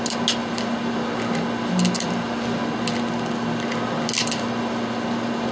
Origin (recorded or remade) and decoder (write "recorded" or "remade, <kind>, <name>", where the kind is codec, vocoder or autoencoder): recorded